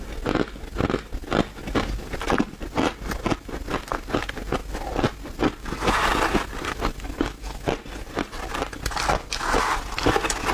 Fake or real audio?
real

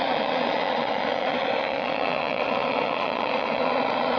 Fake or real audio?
fake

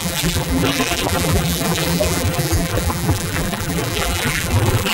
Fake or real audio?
fake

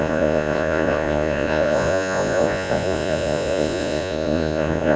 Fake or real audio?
fake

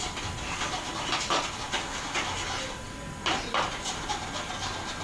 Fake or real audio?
real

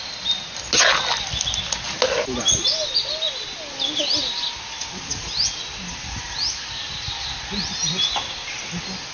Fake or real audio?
real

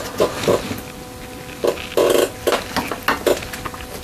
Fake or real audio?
real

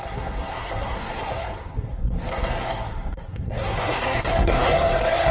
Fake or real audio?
fake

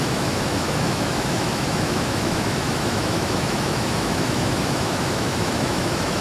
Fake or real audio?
fake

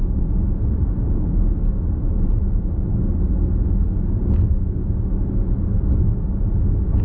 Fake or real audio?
real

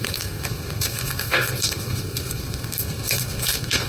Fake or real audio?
fake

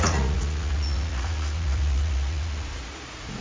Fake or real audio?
fake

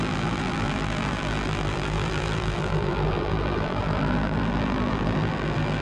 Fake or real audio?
fake